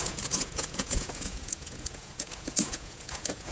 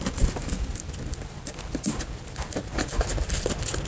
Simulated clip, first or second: first